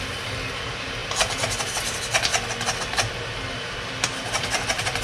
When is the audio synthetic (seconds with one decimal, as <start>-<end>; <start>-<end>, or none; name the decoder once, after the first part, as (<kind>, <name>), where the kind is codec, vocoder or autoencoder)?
0.0-2.3 (vocoder, BigVGAN v2); 2.8-5.0